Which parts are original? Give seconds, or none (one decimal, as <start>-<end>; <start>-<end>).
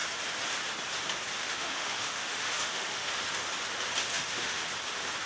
0.0-1.4; 3.1-4.1; 4.6-5.3